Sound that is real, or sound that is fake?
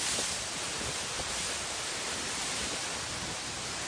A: fake